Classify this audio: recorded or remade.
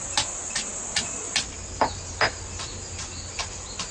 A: recorded